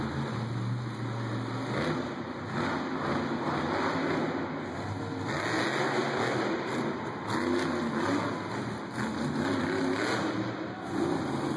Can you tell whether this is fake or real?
real